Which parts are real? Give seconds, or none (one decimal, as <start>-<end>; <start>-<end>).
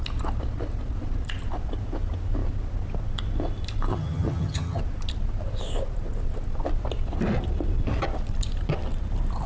0.0-3.9; 4.8-9.5